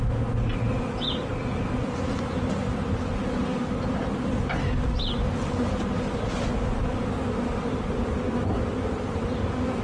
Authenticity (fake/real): real